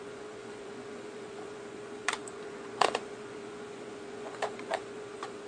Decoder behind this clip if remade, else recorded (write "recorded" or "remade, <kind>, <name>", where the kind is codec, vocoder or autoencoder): remade, vocoder, Vocos